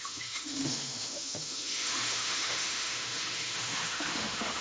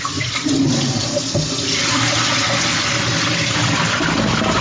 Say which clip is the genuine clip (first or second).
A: second